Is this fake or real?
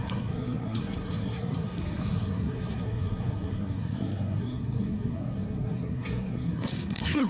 fake